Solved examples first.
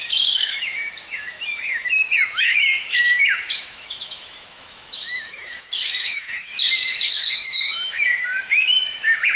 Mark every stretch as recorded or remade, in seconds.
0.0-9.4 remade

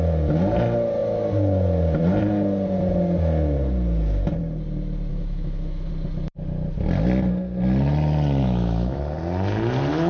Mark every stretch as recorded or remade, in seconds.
0.0-5.1 recorded; 5.1-5.9 remade; 5.9-8.4 recorded; 8.4-9.0 remade; 9.0-10.1 recorded

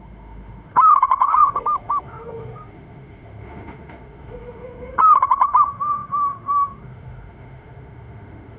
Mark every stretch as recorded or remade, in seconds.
0.0-8.6 remade